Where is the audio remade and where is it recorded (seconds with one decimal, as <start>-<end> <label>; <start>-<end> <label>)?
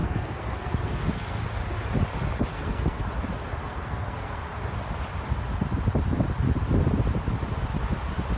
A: 0.0-1.4 remade; 1.4-2.5 recorded; 2.5-3.0 remade; 3.0-3.6 recorded; 3.6-4.4 remade; 4.4-8.4 recorded